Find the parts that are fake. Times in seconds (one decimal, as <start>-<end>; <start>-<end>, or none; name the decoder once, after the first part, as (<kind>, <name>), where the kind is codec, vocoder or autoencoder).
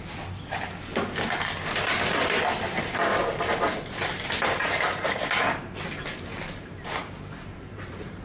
6.3-8.2 (vocoder, BigVGAN v2)